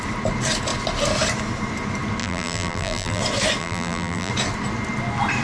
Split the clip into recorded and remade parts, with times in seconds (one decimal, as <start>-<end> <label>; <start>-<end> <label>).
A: 0.0-2.2 recorded; 2.2-3.2 remade; 3.2-3.6 recorded; 3.6-4.3 remade; 4.3-5.4 recorded